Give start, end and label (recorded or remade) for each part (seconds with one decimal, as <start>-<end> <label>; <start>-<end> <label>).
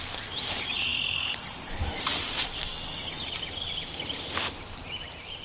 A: 0.0-2.7 remade; 2.7-3.9 recorded; 3.9-5.4 remade